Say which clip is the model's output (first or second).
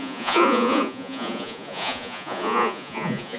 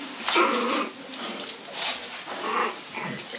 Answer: first